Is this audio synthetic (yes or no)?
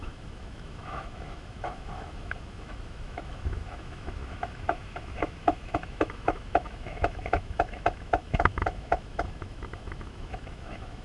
yes